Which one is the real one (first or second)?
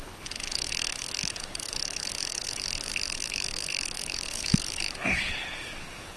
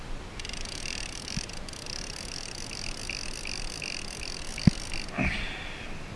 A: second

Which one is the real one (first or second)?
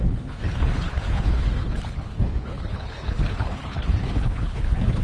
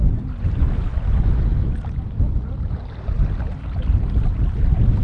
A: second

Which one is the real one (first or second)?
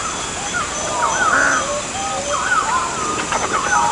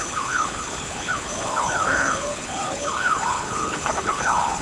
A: first